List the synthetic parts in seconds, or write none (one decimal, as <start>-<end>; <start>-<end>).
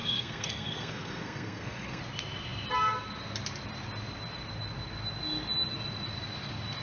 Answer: 0.0-2.0